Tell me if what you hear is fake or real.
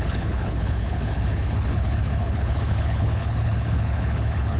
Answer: fake